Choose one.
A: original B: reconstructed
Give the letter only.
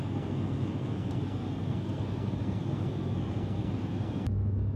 B